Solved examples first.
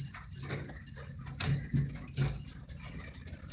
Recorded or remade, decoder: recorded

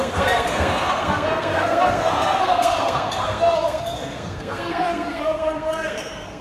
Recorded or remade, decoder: remade, codec, SNAC